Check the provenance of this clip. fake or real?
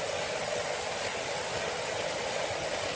real